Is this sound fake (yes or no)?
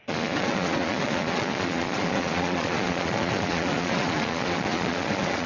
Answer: yes